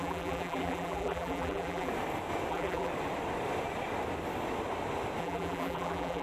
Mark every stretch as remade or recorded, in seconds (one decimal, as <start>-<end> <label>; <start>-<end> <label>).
0.0-1.9 remade; 1.9-2.5 recorded; 2.5-2.9 remade; 2.9-5.2 recorded; 5.2-6.2 remade